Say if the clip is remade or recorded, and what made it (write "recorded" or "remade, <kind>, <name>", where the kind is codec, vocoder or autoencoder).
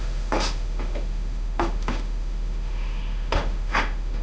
remade, autoencoder, DAC-VAE